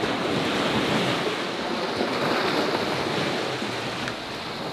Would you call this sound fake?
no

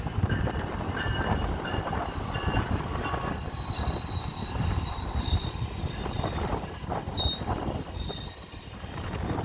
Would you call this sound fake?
yes